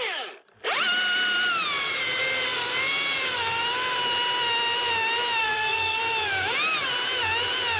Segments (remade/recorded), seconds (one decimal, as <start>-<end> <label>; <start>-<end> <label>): 0.0-5.4 recorded; 5.4-6.0 remade; 6.0-7.8 recorded